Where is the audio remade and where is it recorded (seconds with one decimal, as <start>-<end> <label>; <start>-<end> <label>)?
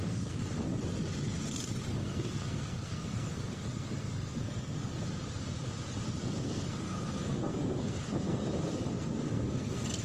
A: 0.0-0.4 remade; 0.4-1.9 recorded; 1.9-4.9 remade; 4.9-6.2 recorded; 6.2-8.4 remade; 8.4-8.9 recorded; 8.9-10.0 remade